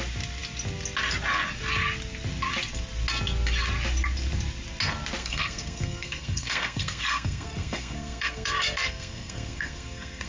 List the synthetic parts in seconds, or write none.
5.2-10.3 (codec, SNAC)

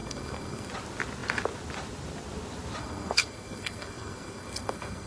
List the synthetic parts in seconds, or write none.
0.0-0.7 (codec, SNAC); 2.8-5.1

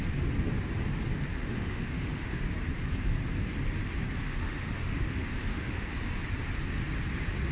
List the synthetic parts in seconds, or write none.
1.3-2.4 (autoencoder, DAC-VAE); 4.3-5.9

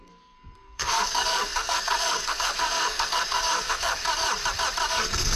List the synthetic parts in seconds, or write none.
0.0-4.0 (codec, SNAC); 4.9-5.4

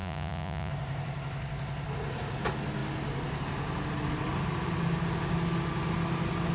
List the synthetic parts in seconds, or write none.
0.0-0.7 (vocoder, Vocos)

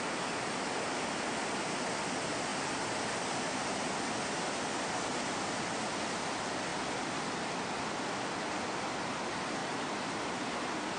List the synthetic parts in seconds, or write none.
none

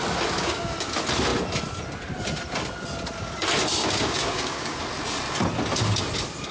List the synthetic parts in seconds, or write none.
0.4-0.9 (codec, DAC); 3.8-4.8

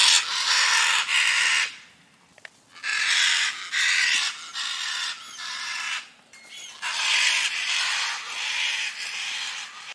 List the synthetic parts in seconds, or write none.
none